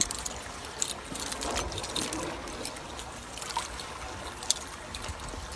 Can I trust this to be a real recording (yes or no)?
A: yes